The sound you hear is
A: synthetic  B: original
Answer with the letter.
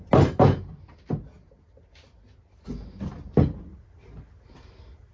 B